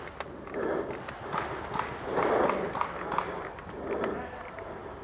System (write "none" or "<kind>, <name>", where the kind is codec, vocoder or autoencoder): none